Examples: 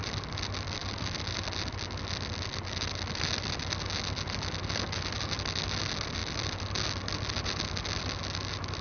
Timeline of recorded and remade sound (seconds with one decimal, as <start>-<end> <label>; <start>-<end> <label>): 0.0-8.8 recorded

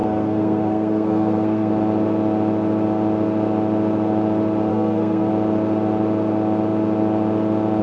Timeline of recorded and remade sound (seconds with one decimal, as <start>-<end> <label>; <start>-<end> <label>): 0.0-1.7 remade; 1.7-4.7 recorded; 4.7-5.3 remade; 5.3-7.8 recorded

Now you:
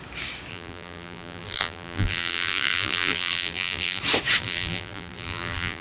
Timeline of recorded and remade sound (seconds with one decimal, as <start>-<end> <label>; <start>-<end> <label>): 0.0-0.5 recorded; 0.5-4.0 remade; 4.0-4.4 recorded; 4.4-5.8 remade

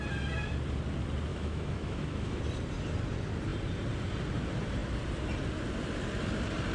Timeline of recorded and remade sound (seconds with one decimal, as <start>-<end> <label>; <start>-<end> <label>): 0.0-1.3 recorded; 1.3-2.4 remade; 2.4-6.7 recorded